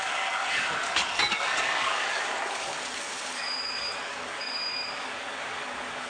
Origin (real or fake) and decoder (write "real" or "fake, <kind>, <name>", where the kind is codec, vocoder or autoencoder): fake, codec, DAC